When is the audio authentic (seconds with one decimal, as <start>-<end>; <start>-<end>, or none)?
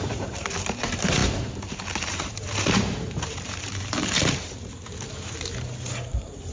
none